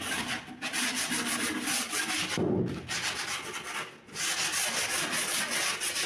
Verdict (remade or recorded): recorded